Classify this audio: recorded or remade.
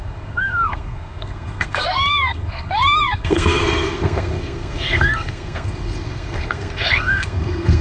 remade